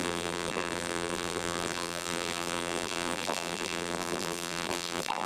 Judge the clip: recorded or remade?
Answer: remade